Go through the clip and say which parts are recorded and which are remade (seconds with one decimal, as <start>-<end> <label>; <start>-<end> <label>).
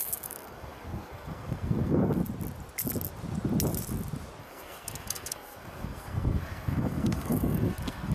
0.0-2.2 remade; 2.2-4.4 recorded; 4.4-8.1 remade